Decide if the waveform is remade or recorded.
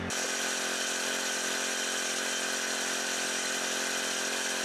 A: recorded